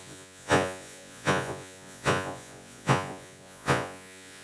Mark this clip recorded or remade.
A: remade